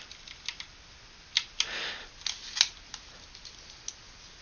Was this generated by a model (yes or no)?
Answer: no